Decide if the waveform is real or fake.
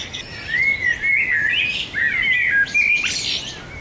real